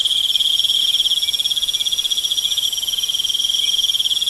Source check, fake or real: real